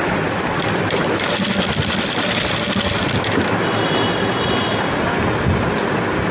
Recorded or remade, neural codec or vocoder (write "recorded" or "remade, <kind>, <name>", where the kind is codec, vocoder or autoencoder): recorded